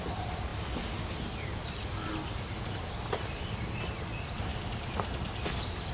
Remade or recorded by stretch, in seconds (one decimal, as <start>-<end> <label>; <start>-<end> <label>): 0.0-5.9 recorded